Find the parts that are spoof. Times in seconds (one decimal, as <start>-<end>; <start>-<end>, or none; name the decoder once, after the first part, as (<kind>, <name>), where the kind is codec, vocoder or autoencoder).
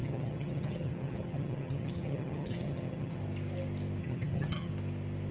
0.0-3.2 (vocoder, HiFi-GAN); 4.0-4.7